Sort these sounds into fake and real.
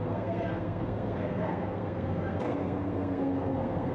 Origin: fake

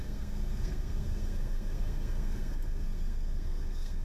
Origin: fake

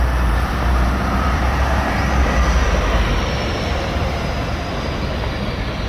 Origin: fake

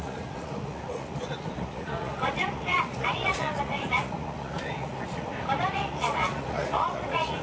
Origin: fake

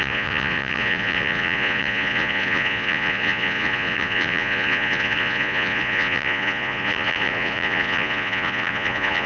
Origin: fake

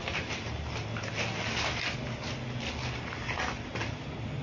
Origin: real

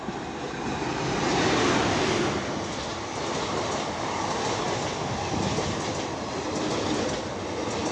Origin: real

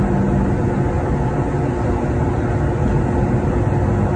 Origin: real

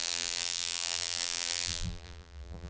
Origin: fake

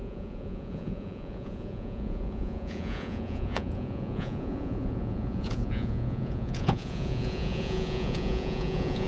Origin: fake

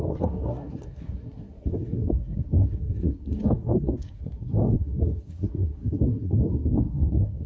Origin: fake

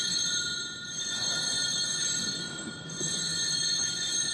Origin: fake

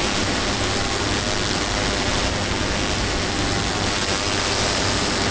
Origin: real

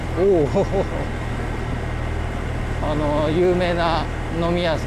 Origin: real